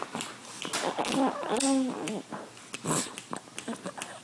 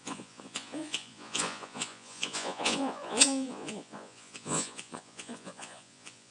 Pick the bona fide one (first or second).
first